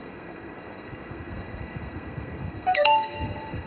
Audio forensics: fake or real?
fake